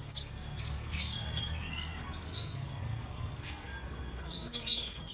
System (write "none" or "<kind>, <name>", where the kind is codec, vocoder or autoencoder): codec, SNAC